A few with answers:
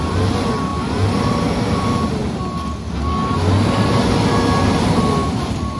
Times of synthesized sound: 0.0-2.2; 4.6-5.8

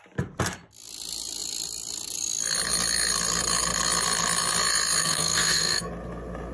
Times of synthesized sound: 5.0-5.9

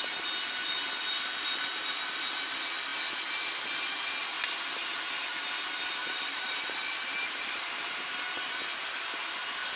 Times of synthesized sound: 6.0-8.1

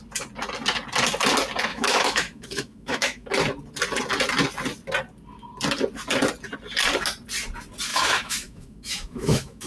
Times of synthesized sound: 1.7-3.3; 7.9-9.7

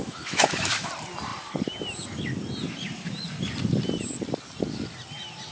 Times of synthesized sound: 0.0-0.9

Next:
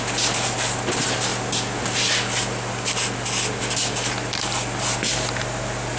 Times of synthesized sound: none

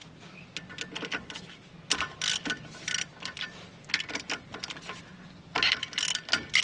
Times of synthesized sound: none